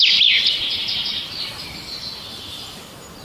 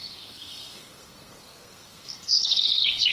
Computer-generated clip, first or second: second